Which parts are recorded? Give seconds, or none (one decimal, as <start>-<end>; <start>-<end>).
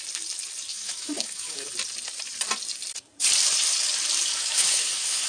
0.0-0.7; 1.7-4.3